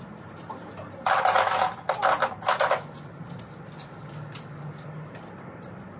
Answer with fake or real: real